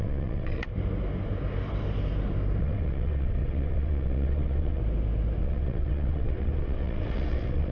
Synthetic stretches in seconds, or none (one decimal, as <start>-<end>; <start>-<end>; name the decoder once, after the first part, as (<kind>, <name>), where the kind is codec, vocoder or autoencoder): 0.0-0.7 (vocoder, WaveNeXt); 2.6-4.8; 5.4-7.7